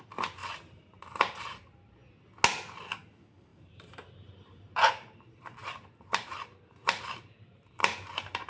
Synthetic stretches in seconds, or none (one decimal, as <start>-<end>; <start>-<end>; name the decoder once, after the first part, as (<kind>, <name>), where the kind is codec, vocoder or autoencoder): 0.4-1.9 (vocoder, BigVGAN v2); 3.5-8.5